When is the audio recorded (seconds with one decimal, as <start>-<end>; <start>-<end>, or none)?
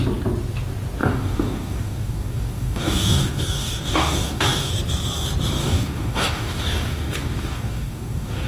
0.0-1.0; 4.7-5.6